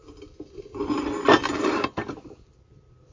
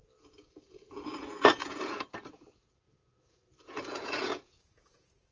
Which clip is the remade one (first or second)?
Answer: second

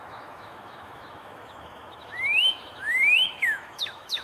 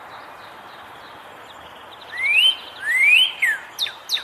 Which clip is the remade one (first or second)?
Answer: first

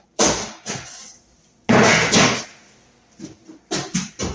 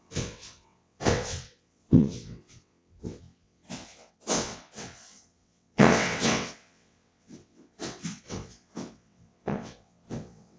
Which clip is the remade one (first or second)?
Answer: second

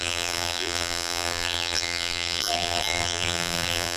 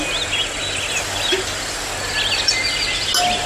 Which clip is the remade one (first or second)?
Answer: first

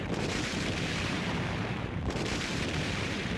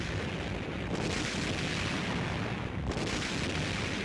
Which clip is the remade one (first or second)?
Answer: first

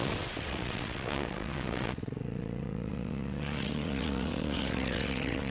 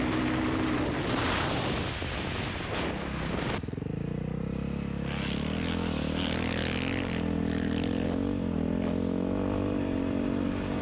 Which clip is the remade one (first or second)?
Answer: first